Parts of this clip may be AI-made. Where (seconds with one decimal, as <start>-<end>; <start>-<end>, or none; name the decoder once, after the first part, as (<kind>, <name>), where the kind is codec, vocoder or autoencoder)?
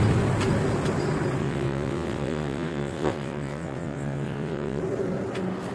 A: 1.4-4.8 (vocoder, WaveNeXt)